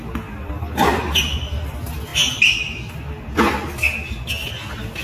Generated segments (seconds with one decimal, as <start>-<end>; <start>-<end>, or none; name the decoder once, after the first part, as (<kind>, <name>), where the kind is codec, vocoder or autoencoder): none